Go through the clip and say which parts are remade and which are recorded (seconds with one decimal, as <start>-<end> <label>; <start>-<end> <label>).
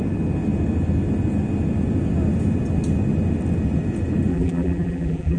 0.0-4.3 recorded; 4.3-5.4 remade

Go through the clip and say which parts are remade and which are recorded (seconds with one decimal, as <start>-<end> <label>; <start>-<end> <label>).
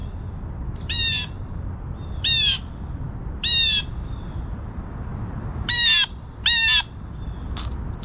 0.0-8.0 recorded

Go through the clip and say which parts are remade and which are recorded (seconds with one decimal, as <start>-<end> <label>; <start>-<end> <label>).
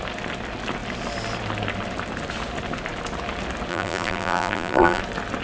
0.0-3.7 recorded; 3.7-5.0 remade; 5.0-5.4 recorded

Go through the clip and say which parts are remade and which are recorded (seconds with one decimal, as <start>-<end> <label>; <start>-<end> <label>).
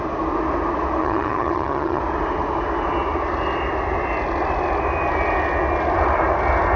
0.0-1.0 recorded; 1.0-2.0 remade; 2.0-6.8 recorded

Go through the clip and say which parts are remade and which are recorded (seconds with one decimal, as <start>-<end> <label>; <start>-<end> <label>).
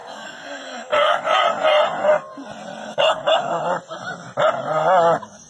0.0-1.2 remade; 1.2-2.8 recorded; 2.8-3.6 remade; 3.6-5.5 recorded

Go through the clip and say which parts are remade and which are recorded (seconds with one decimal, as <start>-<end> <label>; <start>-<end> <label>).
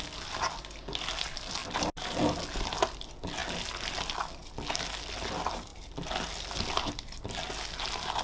0.0-8.2 recorded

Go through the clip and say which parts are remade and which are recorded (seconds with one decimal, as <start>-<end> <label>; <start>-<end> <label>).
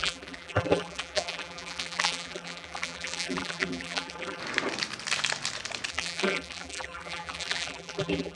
0.0-4.4 remade; 4.4-5.9 recorded; 5.9-8.4 remade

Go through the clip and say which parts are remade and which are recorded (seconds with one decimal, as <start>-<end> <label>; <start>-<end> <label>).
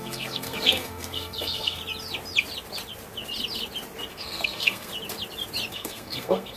0.0-1.8 remade; 1.8-4.1 recorded; 4.1-4.9 remade; 4.9-5.7 recorded; 5.7-6.6 remade